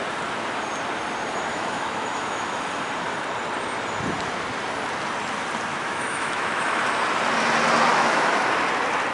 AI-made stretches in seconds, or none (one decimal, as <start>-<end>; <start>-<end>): 1.5-2.7; 5.7-6.8; 7.9-8.4